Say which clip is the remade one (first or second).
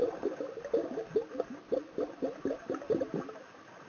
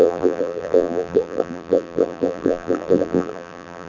second